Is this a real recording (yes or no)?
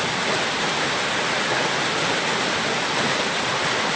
yes